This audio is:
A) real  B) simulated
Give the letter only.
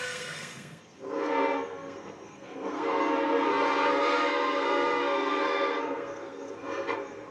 B